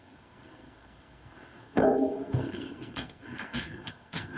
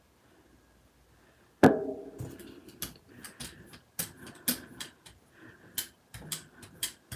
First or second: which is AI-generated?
first